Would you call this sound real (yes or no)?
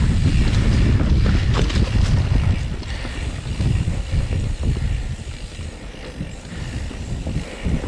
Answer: yes